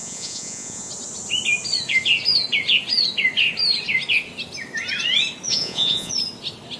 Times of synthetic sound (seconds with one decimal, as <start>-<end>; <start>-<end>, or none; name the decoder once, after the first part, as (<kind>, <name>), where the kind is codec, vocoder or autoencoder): 0.0-0.9 (vocoder, Vocos); 5.5-6.1